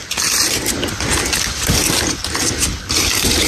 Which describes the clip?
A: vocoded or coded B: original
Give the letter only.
B